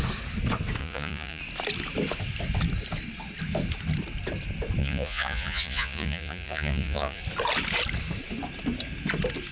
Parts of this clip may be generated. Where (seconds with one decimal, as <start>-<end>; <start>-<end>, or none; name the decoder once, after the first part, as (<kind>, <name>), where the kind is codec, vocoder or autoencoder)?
0.8-1.4 (vocoder, Vocos); 4.8-7.2